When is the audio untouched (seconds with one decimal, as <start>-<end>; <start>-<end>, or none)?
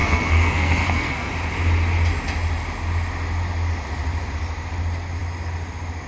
1.3-6.1